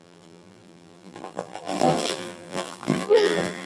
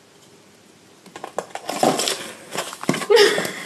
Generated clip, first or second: first